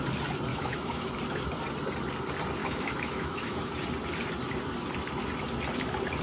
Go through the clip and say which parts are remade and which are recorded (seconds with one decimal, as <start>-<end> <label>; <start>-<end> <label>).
0.0-0.5 recorded; 0.5-1.1 remade; 1.1-2.6 recorded; 2.6-3.7 remade; 3.7-6.2 recorded